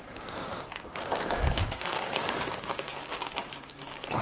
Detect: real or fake fake